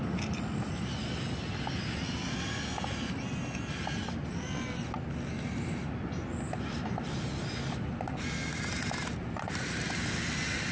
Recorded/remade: recorded